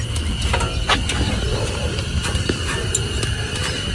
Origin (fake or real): real